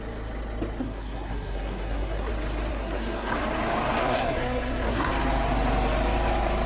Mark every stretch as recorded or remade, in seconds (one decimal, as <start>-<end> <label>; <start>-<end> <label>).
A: 0.0-0.8 recorded; 0.8-2.3 remade; 2.3-2.7 recorded; 2.7-3.3 remade; 3.3-4.0 recorded; 4.0-5.1 remade; 5.1-6.7 recorded